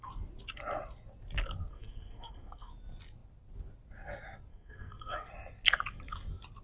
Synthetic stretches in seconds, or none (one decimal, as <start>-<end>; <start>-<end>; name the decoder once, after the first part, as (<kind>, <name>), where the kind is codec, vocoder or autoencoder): 1.7-2.7 (codec, SNAC); 4.5-5.3